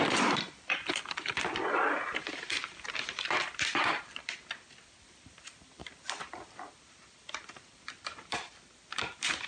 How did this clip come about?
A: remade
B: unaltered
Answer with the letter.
A